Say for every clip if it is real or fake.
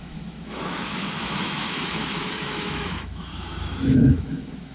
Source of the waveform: fake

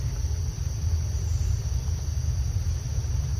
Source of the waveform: real